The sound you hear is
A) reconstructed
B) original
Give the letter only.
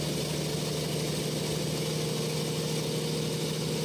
B